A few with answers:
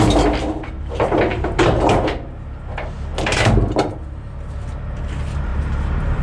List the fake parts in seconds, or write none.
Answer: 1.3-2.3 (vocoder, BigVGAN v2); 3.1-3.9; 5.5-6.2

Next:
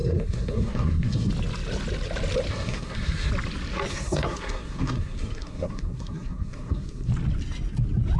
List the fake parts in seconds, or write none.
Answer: 0.0-1.3 (codec, SNAC); 2.5-3.3; 3.9-7.1

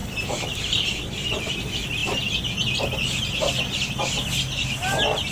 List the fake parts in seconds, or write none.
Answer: none

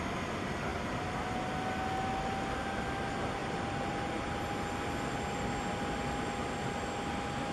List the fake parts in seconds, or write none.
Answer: 0.7-1.5 (vocoder, BigVGAN v2); 3.4-4.4

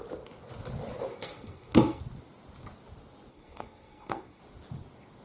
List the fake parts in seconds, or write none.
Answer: 1.1-2.0 (codec, SNAC); 3.3-4.4

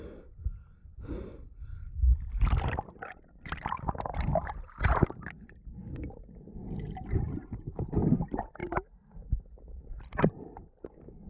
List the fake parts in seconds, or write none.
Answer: 0.0-8.6 (vocoder, BigVGAN v2); 9.9-11.3

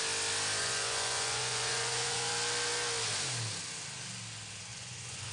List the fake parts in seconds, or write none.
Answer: 0.6-2.3 (vocoder, Vocos); 4.7-5.3

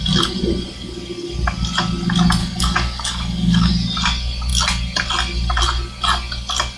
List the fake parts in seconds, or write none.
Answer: 2.4-3.7 (codec, DAC)